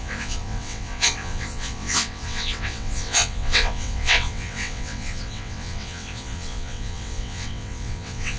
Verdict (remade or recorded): remade